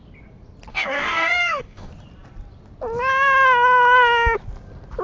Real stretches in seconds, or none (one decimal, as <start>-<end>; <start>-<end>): 0.0-0.7; 1.9-5.0